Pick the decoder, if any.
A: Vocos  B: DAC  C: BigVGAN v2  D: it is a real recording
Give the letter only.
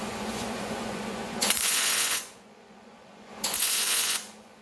A